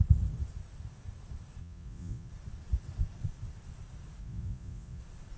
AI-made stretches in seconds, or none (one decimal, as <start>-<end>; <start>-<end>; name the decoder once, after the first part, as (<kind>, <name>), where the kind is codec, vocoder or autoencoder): 1.6-2.3 (vocoder, Vocos); 4.2-5.0